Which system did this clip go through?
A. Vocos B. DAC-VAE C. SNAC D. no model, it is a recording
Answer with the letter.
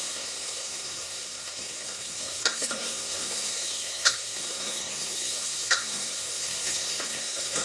C